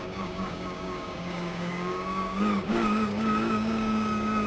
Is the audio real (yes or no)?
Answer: no